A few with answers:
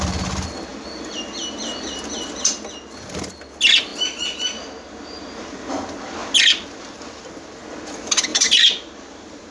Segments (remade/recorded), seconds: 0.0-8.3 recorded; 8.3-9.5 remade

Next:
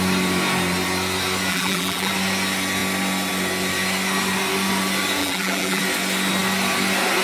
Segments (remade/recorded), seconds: 0.0-1.5 recorded; 1.5-2.1 remade; 2.1-5.2 recorded; 5.2-5.8 remade; 5.8-7.2 recorded

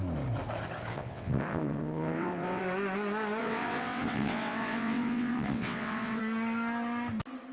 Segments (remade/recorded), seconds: 0.0-0.9 recorded; 0.9-2.6 remade; 2.6-3.4 recorded; 3.4-6.2 remade; 6.2-7.5 recorded

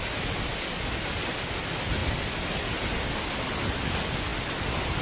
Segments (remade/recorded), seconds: 0.0-5.0 recorded

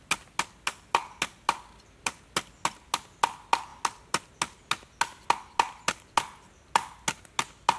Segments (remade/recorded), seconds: 0.0-7.8 recorded

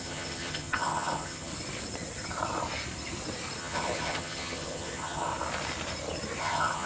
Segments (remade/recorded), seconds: 0.0-1.5 remade; 1.5-3.6 recorded; 3.6-5.3 remade; 5.3-6.4 recorded; 6.4-6.9 remade